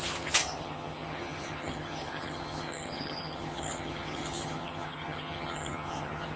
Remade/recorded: remade